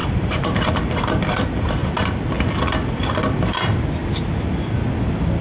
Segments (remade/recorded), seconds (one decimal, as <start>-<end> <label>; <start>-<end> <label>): 0.0-5.4 recorded